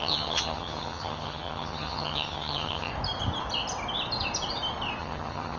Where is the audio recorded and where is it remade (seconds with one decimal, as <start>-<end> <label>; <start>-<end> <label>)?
0.0-2.9 remade; 2.9-5.0 recorded; 5.0-5.6 remade